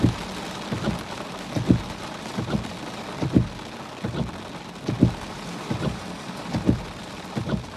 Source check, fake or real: real